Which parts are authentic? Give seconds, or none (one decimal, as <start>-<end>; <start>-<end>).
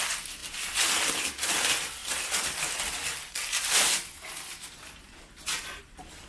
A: 0.0-6.3